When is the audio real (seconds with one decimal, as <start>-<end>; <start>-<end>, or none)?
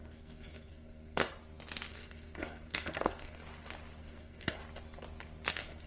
1.2-1.9; 3.4-4.0; 4.6-5.5